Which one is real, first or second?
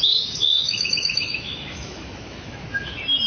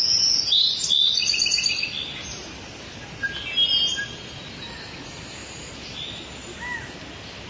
second